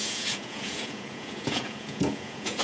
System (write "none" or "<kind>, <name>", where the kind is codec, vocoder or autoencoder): vocoder, Vocos